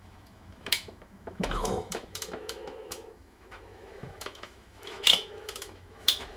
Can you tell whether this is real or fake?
fake